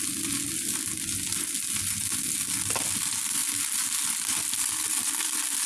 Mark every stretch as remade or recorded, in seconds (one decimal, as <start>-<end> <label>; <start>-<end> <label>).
0.0-5.7 recorded